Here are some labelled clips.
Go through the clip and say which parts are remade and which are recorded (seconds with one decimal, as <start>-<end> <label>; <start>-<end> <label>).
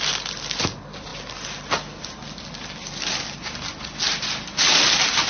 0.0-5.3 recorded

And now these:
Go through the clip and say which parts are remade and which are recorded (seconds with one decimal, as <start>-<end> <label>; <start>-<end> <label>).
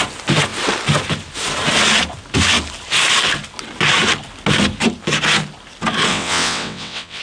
0.0-6.1 recorded; 6.1-7.2 remade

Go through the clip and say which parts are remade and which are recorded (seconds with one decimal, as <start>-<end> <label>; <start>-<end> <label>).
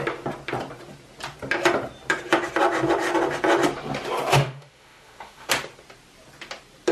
0.0-4.3 recorded; 4.3-5.5 remade; 5.5-6.9 recorded